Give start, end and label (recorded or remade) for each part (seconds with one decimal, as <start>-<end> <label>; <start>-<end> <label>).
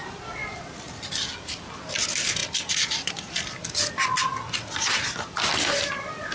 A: 0.0-2.4 recorded; 2.4-3.1 remade; 3.1-6.3 recorded